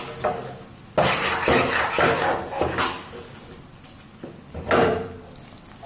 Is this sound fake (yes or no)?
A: no